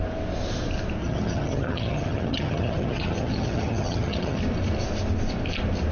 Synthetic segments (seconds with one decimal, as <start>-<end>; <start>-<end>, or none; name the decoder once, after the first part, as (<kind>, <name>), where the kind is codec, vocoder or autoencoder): 1.0-4.4 (vocoder, HiFi-GAN)